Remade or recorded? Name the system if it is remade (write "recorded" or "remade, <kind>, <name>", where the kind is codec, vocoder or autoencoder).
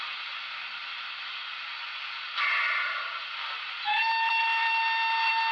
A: recorded